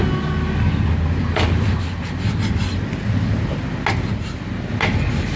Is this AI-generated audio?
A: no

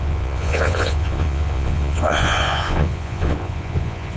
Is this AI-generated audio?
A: yes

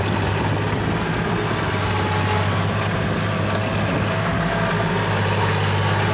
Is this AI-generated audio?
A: no